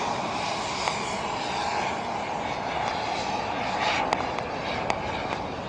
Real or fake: real